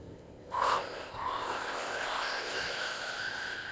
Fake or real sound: fake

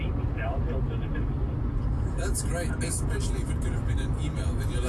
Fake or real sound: real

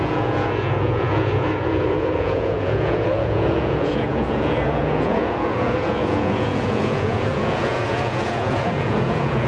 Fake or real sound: fake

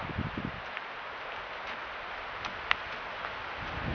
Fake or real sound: real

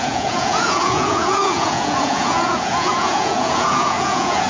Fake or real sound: fake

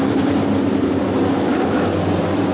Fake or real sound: real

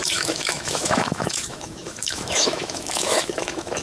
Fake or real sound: fake